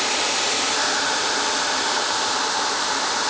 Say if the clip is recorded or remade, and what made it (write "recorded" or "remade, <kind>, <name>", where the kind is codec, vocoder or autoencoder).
remade, vocoder, BigVGAN v2